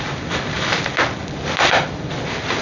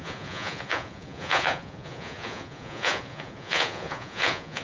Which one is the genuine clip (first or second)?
first